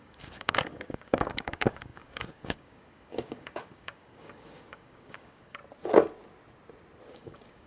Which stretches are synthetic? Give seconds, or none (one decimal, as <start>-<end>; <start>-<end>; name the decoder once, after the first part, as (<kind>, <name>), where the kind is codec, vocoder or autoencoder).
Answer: 0.0-5.6 (codec, DAC); 7.1-7.7